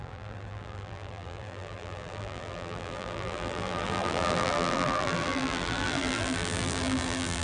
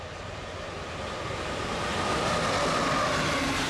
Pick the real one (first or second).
second